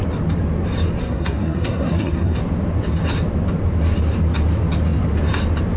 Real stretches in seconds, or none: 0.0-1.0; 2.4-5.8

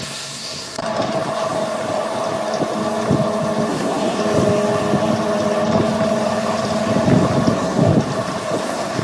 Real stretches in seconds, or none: 0.8-3.7; 4.2-7.5; 7.9-8.6

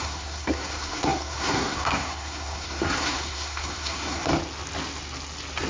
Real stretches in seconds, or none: 4.3-5.7

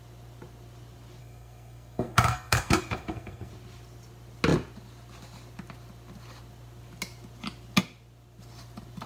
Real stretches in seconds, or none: 0.0-1.2; 3.5-9.1

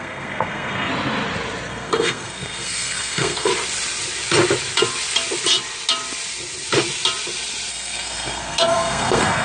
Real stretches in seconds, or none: 0.9-1.7; 3.5-7.7

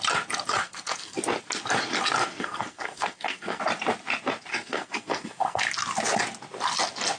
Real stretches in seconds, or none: 0.0-0.6; 1.2-2.2; 3.6-4.5; 5.6-7.2